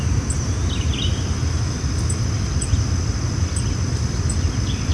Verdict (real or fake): real